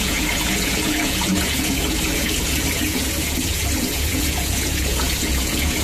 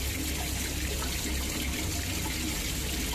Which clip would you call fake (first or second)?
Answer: first